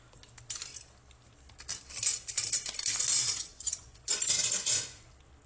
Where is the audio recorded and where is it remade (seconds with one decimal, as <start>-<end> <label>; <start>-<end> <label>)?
0.0-3.1 recorded; 3.1-5.0 remade; 5.0-5.5 recorded

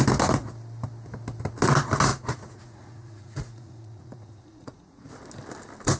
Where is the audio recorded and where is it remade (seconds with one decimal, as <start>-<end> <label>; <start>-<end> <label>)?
0.0-2.1 recorded; 2.1-5.1 remade; 5.1-6.0 recorded

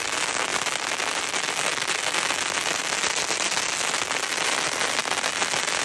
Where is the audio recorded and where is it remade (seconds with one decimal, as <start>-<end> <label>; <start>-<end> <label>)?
0.0-5.8 recorded

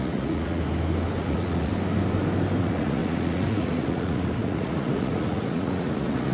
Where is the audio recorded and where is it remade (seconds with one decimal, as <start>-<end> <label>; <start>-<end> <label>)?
0.0-0.6 remade; 0.6-1.2 recorded; 1.2-1.7 remade; 1.7-2.6 recorded; 2.6-6.3 remade

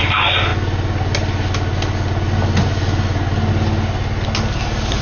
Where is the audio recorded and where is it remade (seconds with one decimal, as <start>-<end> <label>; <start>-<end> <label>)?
0.0-5.0 recorded

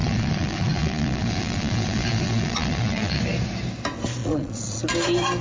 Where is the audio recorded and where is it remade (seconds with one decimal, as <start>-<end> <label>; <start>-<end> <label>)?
0.0-3.2 remade; 3.2-4.2 recorded; 4.2-4.8 remade; 4.8-5.4 recorded